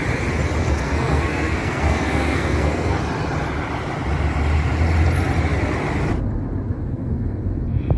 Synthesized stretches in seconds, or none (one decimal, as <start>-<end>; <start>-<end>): 0.6-3.0; 6.9-7.4